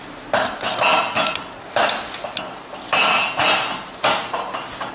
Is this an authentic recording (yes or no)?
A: yes